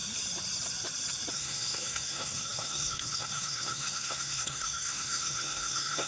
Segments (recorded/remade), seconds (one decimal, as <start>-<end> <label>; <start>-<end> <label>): 0.0-1.3 recorded; 1.3-6.1 remade